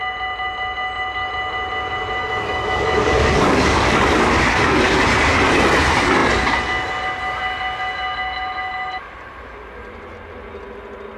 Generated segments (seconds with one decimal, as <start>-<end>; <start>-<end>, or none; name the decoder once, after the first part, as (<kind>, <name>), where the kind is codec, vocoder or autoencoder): 2.2-5.0 (codec, DAC)